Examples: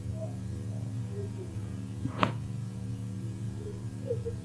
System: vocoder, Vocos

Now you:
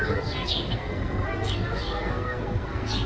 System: codec, SNAC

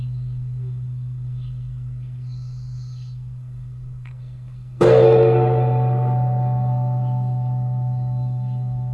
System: codec, SNAC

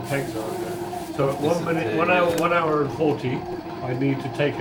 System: vocoder, BigVGAN v2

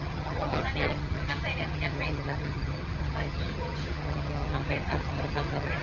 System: vocoder, HiFi-GAN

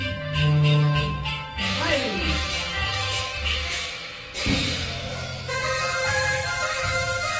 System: autoencoder, DAC-VAE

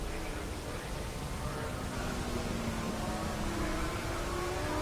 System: none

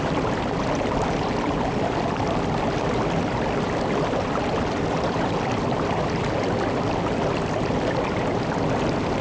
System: vocoder, BigVGAN v2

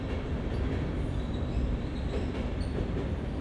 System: none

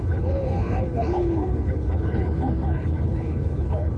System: codec, HILCodec